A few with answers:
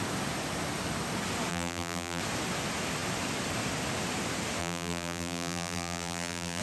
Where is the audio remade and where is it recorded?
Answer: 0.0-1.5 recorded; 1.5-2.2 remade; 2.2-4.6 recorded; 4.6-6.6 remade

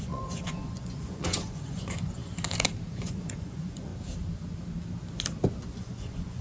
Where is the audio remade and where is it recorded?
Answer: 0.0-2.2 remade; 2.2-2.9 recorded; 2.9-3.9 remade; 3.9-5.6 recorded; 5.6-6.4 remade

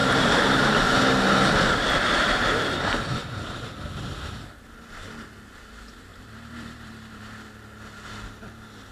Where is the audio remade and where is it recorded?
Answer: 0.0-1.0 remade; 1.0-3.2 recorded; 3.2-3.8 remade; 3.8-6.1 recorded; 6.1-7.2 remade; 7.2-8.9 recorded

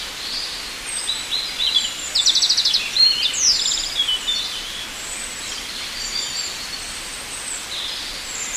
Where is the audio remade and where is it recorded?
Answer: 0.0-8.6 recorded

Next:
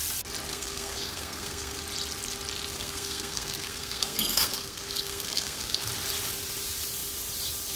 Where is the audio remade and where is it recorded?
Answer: 0.0-0.5 recorded; 0.5-1.8 remade; 1.8-2.7 recorded; 2.7-5.9 remade; 5.9-7.8 recorded

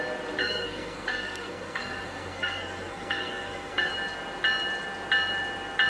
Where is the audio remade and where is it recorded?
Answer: 0.0-0.4 recorded; 0.4-3.9 remade; 3.9-5.9 recorded

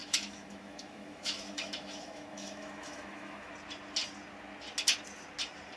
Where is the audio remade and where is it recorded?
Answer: 0.0-3.5 remade; 3.5-5.8 recorded

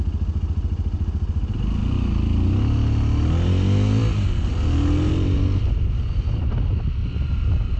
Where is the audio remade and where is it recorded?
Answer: 0.0-7.8 recorded